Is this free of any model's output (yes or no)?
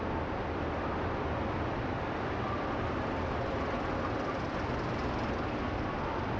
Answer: yes